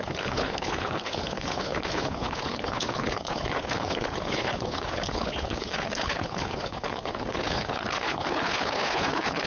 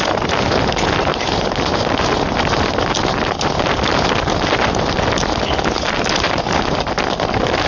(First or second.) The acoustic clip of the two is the second